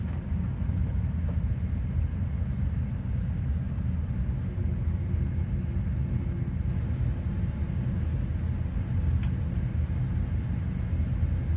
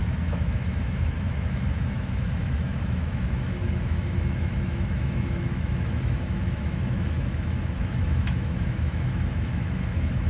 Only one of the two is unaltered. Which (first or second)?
first